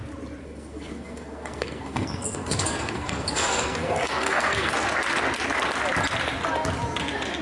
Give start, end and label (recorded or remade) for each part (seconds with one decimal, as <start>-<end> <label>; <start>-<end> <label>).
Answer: 0.0-0.4 recorded; 0.4-4.7 remade; 4.7-7.4 recorded